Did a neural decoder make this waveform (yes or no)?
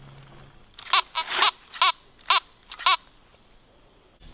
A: no